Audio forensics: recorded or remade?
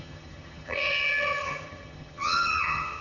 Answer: remade